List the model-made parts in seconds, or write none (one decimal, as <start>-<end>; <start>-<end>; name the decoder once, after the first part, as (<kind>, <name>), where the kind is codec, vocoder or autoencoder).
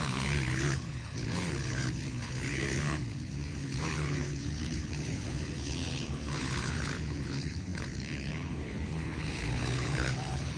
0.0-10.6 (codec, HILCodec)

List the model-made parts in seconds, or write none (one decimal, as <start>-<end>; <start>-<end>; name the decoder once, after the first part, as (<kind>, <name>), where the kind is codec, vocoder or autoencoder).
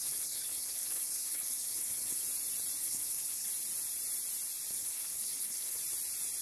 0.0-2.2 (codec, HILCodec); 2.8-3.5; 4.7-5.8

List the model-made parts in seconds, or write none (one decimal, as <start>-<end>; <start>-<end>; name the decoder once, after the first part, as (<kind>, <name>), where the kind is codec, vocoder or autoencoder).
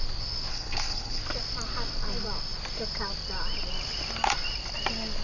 0.5-1.2 (codec, HILCodec)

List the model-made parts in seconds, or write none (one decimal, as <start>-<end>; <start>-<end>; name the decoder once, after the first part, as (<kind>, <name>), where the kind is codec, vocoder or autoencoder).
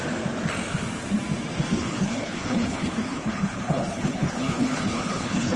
1.8-5.6 (codec, HILCodec)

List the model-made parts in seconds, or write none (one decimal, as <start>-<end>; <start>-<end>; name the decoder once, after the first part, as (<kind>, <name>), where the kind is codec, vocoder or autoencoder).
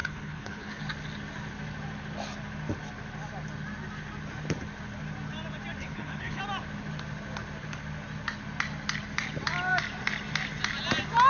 0.0-0.8 (codec, HILCodec); 5.8-6.4